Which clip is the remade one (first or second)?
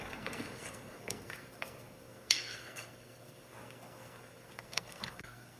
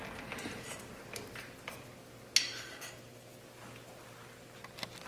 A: first